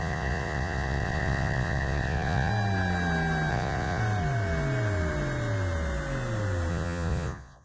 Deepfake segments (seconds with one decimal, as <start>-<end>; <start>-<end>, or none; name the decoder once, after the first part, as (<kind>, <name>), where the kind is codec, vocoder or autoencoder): 0.0-2.5 (vocoder, Vocos); 3.5-4.0; 6.7-7.6